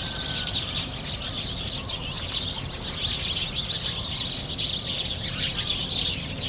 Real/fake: real